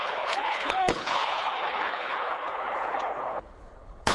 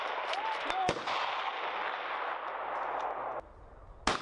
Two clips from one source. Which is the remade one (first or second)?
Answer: first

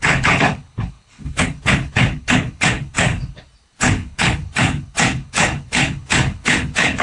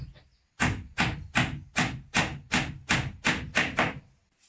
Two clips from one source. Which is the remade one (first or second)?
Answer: first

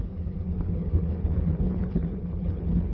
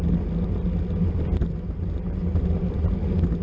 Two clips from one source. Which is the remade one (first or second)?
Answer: first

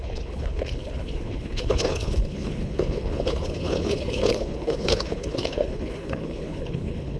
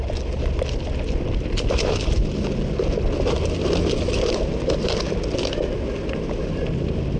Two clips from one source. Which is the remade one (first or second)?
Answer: first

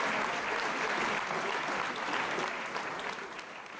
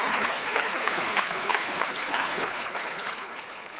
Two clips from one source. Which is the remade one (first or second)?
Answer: second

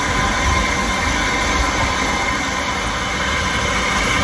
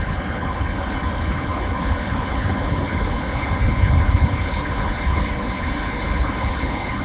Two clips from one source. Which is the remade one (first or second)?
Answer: second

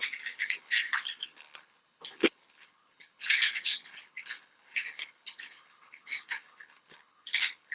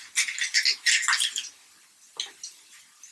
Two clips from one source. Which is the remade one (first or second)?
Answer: first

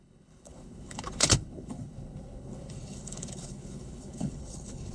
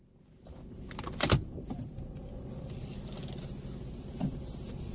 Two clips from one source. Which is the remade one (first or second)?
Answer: first